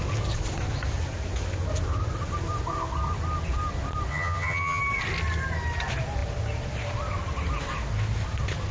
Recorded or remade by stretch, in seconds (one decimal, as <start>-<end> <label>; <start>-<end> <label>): 0.0-4.1 recorded; 4.1-4.8 remade; 4.8-8.7 recorded